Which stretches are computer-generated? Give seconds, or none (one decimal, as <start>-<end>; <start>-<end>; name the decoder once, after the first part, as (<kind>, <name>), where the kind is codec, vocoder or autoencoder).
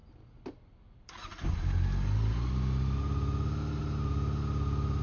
none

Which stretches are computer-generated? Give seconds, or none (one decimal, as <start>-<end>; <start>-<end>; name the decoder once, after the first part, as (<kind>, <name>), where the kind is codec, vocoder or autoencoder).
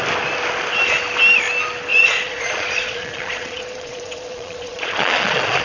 1.9-5.6 (vocoder, Vocos)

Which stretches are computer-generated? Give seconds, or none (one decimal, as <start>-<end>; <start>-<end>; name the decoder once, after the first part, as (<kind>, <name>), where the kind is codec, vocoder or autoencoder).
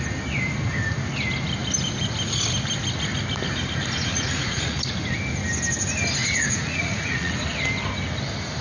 4.1-4.8 (vocoder, Vocos); 6.2-7.3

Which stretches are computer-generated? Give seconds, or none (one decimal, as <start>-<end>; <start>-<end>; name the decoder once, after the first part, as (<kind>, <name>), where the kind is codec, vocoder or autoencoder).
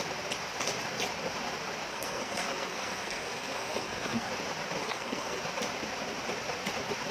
1.9-4.3 (codec, SNAC); 4.8-5.4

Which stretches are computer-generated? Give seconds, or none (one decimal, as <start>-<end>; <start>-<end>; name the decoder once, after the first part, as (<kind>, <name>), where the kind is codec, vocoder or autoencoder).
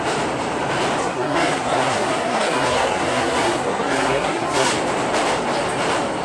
1.0-4.7 (codec, SNAC)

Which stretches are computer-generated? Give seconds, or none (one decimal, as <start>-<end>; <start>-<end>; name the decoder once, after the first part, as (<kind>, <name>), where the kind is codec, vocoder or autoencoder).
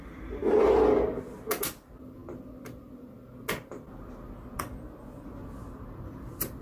0.0-0.4 (vocoder, BigVGAN v2); 1.7-2.2; 6.0-6.6